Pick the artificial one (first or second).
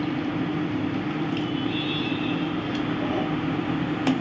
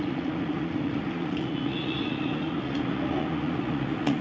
second